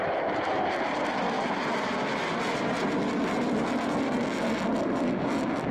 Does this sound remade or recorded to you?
recorded